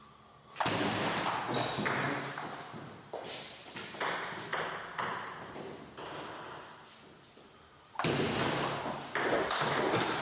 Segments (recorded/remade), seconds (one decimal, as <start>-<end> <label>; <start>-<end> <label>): 0.0-10.2 recorded

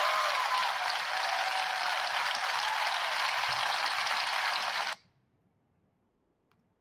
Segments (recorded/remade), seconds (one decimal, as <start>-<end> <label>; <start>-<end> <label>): 0.0-6.8 recorded

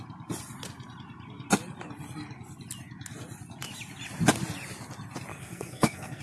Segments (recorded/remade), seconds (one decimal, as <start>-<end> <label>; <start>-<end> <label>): 0.0-5.3 recorded; 5.3-6.2 remade

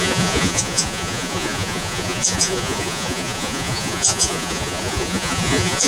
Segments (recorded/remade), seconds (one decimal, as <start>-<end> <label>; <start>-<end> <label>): 0.0-5.9 remade

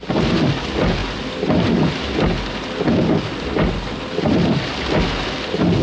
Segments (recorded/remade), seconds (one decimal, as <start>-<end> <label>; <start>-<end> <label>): 0.0-5.8 recorded